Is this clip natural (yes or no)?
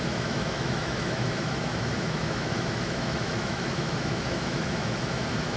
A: no